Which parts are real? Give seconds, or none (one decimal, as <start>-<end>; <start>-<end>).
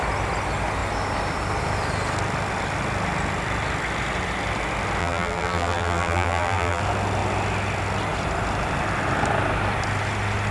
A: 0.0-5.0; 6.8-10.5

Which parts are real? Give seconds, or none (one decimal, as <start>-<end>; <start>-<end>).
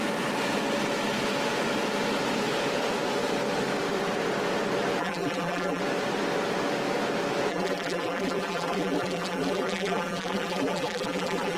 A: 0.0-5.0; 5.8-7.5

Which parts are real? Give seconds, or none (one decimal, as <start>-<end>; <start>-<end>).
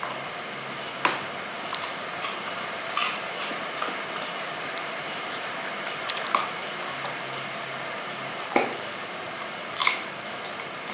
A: 6.6-7.1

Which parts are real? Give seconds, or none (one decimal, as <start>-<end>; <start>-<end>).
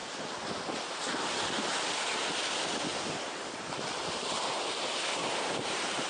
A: 0.0-2.9; 4.5-5.2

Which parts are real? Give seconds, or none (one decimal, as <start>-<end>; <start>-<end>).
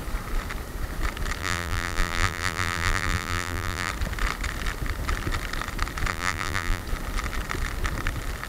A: 0.0-1.4; 3.9-6.1; 6.8-8.5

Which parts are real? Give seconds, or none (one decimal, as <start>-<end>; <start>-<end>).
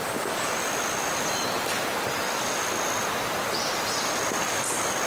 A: 0.0-5.1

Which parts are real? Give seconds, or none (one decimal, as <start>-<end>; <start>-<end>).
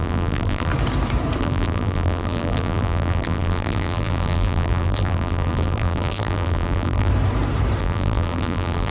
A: 0.7-1.4; 7.1-7.8